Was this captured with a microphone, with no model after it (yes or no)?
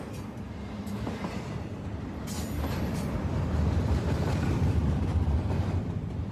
no